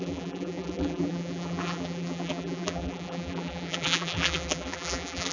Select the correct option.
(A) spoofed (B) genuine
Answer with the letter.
A